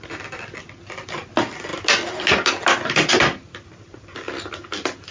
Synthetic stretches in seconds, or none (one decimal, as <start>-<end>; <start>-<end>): 0.0-1.7; 3.1-5.1